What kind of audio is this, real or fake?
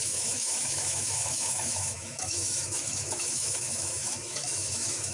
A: fake